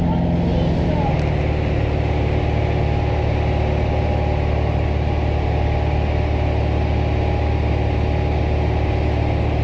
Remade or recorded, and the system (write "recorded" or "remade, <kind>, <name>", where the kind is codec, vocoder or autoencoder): recorded